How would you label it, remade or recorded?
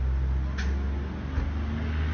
recorded